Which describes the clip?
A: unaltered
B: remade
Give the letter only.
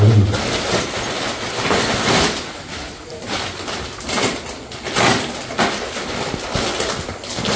A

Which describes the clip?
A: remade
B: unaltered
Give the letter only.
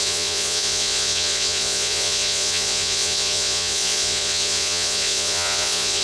A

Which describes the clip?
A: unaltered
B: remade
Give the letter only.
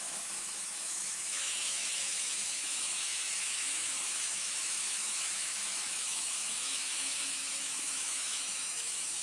B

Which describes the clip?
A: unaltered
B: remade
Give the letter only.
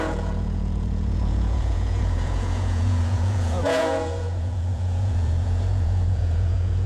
B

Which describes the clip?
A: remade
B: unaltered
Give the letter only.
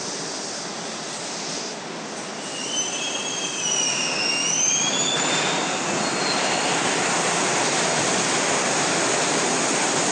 B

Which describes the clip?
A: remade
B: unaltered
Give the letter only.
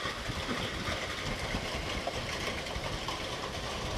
B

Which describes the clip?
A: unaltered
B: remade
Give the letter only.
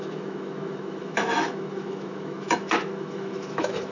B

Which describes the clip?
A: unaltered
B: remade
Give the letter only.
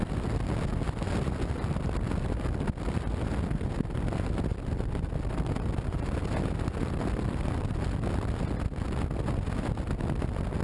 A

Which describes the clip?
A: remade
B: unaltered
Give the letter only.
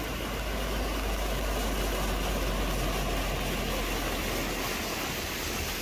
B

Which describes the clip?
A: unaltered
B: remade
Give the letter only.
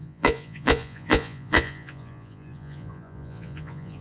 B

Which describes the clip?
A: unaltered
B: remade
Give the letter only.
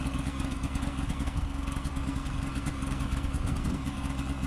B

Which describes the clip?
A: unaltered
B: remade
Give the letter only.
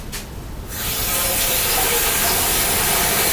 A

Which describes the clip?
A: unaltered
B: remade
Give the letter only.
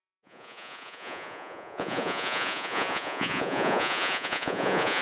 B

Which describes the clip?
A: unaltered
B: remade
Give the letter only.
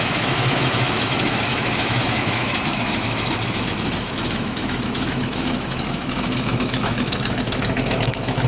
B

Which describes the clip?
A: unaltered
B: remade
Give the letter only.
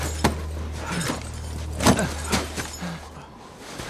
A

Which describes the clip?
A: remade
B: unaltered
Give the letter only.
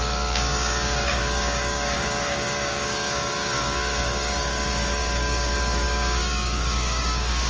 A